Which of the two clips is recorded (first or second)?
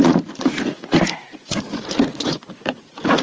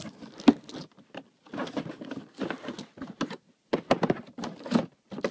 second